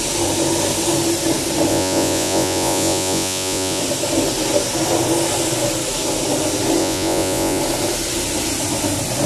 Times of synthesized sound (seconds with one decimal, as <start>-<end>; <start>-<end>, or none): 1.7-3.8; 6.8-7.6